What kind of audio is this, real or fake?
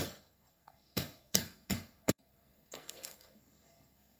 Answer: fake